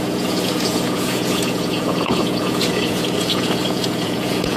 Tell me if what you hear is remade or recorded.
remade